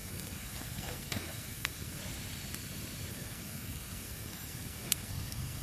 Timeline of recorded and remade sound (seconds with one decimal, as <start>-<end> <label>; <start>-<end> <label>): 0.0-2.0 remade; 2.0-3.1 recorded; 3.1-5.6 remade